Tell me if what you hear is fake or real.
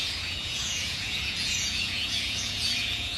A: fake